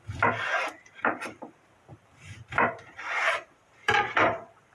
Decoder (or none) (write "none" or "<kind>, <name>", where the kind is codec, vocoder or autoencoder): vocoder, BigVGAN v2